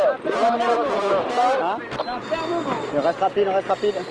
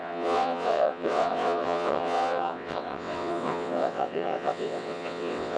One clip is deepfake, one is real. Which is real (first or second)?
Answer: first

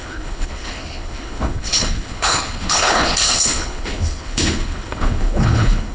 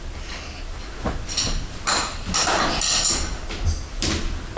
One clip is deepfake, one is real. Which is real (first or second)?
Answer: second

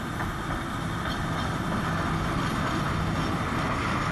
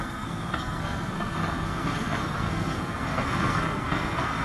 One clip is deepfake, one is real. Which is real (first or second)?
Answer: first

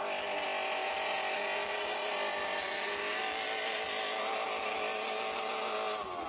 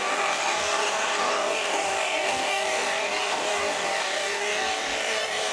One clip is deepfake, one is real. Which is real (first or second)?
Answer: first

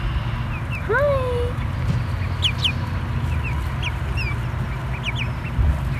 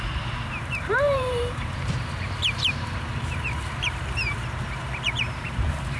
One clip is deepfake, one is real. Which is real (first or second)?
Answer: first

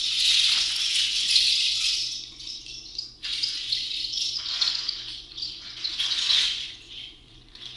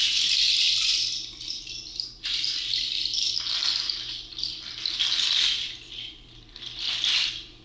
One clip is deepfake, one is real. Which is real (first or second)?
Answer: second